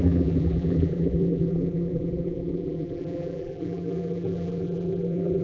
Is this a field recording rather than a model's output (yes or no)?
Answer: no